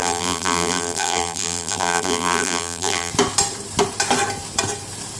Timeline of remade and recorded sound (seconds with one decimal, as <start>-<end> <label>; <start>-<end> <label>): 0.0-3.1 remade; 3.1-5.2 recorded